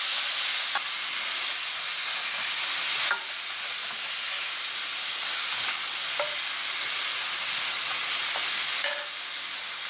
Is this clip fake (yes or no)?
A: no